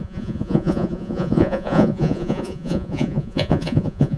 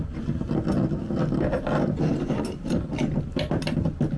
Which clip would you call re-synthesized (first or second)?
first